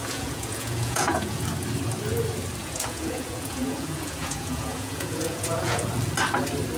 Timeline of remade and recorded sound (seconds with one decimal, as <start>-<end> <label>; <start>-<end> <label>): 0.0-1.4 remade; 1.4-2.6 recorded; 2.6-5.9 remade; 5.9-6.8 recorded

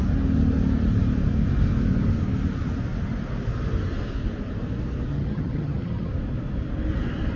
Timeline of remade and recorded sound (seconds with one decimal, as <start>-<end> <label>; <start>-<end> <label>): 0.0-5.1 recorded; 5.1-6.1 remade; 6.1-7.4 recorded

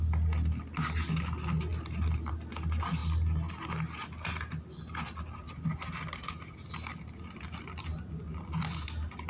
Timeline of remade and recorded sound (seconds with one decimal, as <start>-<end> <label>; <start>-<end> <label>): 0.0-9.3 recorded

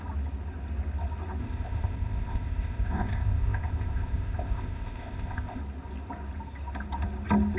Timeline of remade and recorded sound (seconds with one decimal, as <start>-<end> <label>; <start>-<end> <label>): 0.0-1.4 recorded; 1.4-5.6 remade; 5.6-7.6 recorded

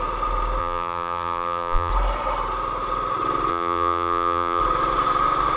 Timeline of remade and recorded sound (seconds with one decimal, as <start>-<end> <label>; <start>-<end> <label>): 0.0-0.6 recorded; 0.6-1.9 remade; 1.9-3.5 recorded; 3.5-4.6 remade; 4.6-5.6 recorded